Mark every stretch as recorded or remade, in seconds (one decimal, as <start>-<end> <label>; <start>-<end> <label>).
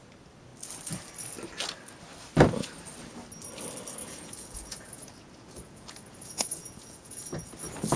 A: 0.0-4.0 recorded; 4.0-7.6 remade; 7.6-8.0 recorded